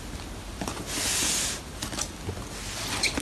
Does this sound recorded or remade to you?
recorded